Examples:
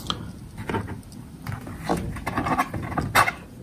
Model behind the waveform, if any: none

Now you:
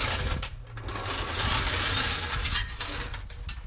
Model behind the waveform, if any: none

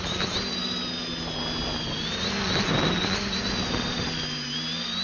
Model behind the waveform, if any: none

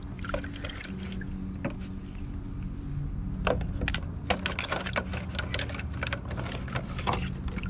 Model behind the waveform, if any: none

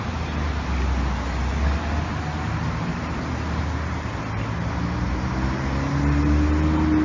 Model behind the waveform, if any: none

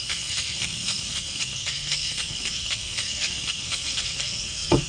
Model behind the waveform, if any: codec, SNAC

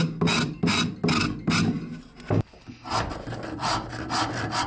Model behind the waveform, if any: none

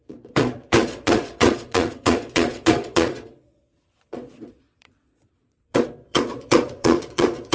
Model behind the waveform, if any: vocoder, Vocos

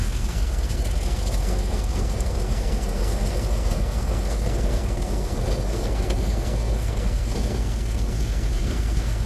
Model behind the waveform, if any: codec, SNAC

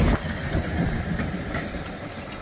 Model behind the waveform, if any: none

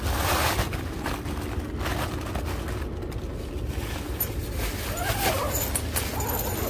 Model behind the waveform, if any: none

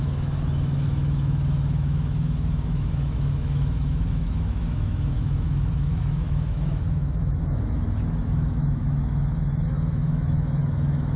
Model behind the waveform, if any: autoencoder, DAC-VAE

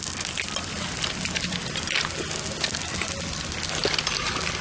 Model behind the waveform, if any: none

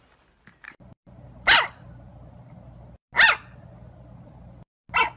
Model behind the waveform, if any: none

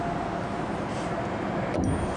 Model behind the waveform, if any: none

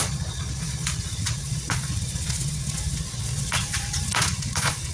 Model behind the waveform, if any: vocoder, Vocos